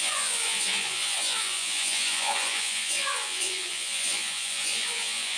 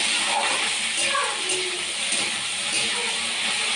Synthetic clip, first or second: first